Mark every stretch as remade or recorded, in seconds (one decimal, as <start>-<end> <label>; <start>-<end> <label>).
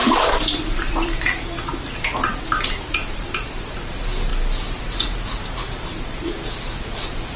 0.0-3.7 remade; 3.7-4.3 recorded; 4.3-4.8 remade; 4.8-5.9 recorded; 5.9-6.5 remade; 6.5-7.4 recorded